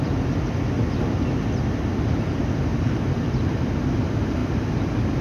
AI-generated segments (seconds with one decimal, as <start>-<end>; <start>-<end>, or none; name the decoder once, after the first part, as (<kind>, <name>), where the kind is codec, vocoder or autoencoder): 2.7-3.7 (vocoder, BigVGAN v2)